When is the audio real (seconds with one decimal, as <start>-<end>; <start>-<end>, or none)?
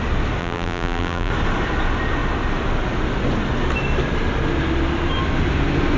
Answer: 0.0-0.4; 1.3-6.0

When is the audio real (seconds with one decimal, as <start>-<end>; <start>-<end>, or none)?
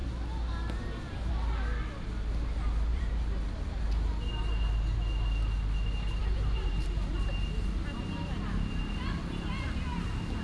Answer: 0.0-2.9; 3.5-6.2; 7.3-10.4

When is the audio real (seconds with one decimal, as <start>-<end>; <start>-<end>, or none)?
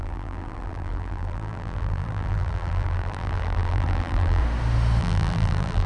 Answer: 4.4-5.0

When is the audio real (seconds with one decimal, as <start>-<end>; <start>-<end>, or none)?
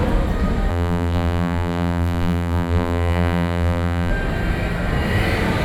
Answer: 0.0-0.7; 4.1-5.6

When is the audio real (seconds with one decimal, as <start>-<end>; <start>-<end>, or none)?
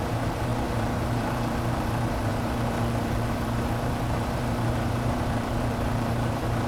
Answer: none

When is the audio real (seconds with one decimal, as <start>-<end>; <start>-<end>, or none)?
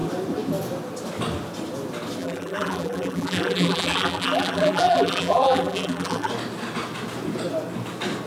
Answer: 0.0-2.2; 6.3-8.3